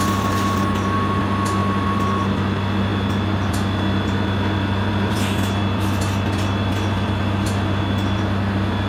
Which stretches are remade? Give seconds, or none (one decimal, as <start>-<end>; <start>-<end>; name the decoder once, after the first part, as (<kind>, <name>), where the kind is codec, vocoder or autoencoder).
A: none